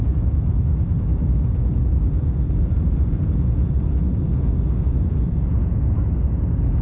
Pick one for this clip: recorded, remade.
remade